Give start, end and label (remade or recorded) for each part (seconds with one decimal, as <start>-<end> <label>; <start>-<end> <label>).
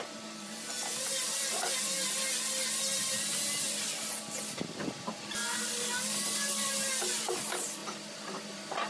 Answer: 0.0-8.9 recorded